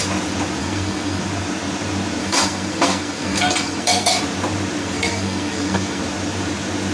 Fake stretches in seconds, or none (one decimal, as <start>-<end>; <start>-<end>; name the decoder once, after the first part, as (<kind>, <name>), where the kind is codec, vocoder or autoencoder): 0.6-1.2 (codec, SNAC); 2.2-4.2; 4.8-6.0